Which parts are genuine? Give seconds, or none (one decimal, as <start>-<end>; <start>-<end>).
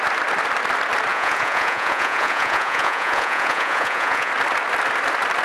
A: 0.0-1.1; 4.3-5.4